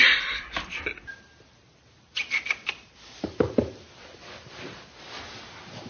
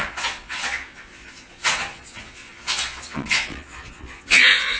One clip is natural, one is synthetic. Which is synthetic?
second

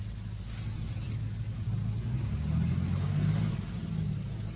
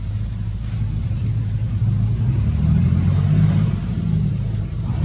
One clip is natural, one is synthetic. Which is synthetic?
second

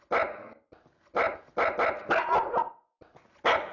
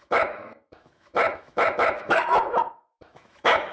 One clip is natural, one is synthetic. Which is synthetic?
second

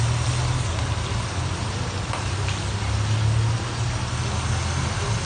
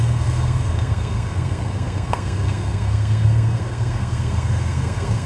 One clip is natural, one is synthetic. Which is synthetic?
second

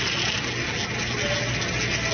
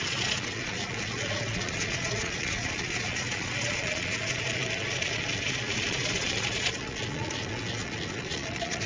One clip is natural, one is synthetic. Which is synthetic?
second